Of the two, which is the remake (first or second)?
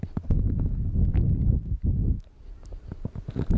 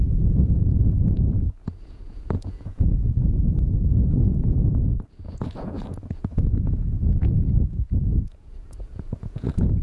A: second